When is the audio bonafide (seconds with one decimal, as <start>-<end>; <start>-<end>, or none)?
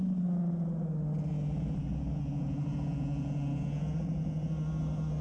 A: 0.0-5.2